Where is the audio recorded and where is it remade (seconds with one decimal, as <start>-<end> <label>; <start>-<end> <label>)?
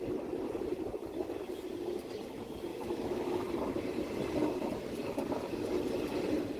0.0-2.7 recorded; 2.7-3.5 remade; 3.5-6.6 recorded